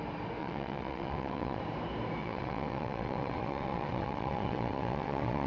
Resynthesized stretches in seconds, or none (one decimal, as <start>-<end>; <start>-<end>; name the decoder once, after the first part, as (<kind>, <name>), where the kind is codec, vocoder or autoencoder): 0.4-1.6 (vocoder, WaveNeXt); 2.2-5.5